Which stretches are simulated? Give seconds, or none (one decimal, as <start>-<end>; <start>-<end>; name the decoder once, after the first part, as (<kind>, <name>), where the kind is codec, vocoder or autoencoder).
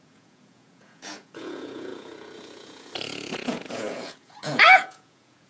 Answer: 0.0-5.5 (vocoder, Vocos)